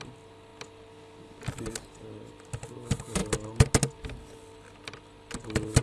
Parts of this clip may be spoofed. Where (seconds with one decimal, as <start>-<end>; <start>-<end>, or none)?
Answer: none